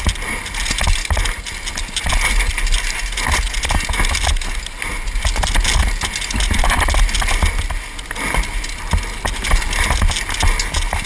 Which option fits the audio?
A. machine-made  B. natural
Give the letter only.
B